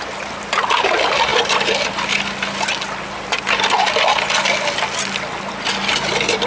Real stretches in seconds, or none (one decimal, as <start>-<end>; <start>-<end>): 0.0-6.5

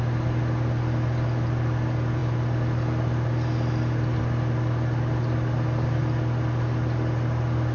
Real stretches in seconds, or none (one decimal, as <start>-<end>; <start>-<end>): 0.0-7.7

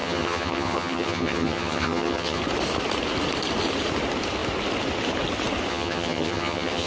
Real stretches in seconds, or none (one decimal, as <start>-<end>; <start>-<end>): 2.4-5.7

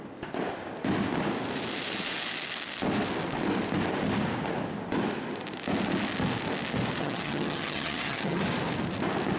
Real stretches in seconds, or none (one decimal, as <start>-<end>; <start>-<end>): 0.0-7.0; 8.4-9.4

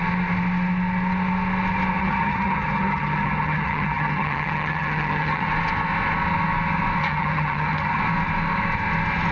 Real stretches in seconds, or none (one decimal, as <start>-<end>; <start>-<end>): 0.0-2.0; 5.5-7.0; 8.0-9.3

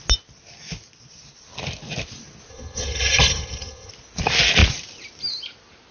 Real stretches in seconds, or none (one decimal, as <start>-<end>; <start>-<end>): 0.0-2.5; 3.9-5.9

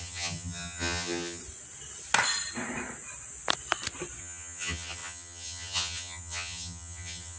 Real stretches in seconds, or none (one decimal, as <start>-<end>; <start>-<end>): 1.4-4.2